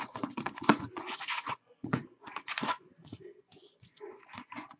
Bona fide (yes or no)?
no